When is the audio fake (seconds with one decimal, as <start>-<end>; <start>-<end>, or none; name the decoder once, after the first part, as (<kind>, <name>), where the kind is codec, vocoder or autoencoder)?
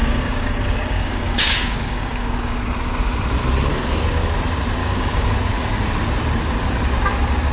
0.0-2.9 (codec, DAC); 4.8-5.3